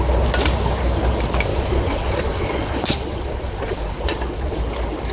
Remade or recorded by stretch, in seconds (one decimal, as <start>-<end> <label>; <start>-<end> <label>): 0.0-1.5 recorded; 1.5-4.6 remade; 4.6-5.1 recorded